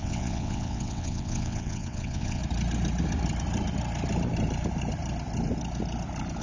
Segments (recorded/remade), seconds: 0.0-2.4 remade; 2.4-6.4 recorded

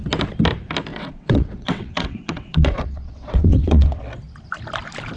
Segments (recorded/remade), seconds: 0.0-0.9 recorded; 0.9-4.0 remade; 4.0-5.2 recorded

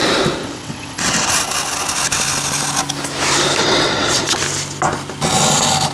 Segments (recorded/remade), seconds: 0.0-0.4 recorded; 0.4-1.3 remade; 1.3-3.6 recorded; 3.6-4.4 remade; 4.4-5.9 recorded

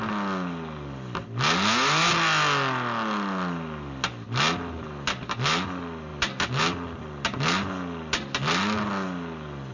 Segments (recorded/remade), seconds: 0.0-9.7 recorded

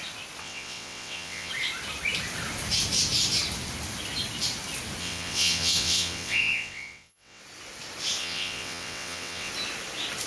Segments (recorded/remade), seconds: 0.0-0.4 recorded; 0.4-1.5 remade; 1.5-5.0 recorded; 5.0-7.4 remade; 7.4-8.2 recorded; 8.2-9.5 remade; 9.5-10.3 recorded

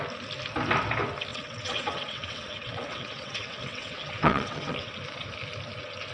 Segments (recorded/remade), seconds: 0.0-1.3 recorded; 1.3-5.0 remade; 5.0-6.1 recorded